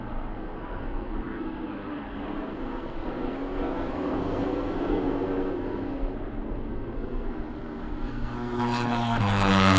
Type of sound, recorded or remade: remade